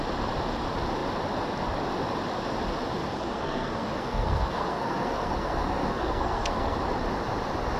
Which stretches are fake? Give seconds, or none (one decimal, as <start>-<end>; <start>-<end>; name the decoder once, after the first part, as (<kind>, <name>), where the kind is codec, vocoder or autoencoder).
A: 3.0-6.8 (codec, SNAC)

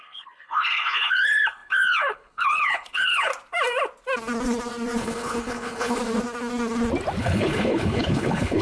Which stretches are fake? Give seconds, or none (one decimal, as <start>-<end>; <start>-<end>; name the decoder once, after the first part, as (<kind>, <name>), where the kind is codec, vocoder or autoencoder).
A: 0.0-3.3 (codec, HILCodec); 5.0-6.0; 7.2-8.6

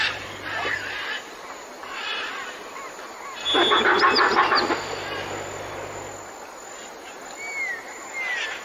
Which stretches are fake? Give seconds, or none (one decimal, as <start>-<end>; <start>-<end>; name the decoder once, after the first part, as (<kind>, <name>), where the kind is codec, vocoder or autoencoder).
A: none

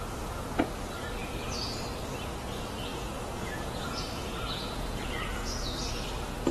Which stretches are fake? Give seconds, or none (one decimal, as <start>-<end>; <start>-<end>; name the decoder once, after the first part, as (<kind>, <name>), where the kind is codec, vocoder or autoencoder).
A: 2.9-5.9 (vocoder, Vocos)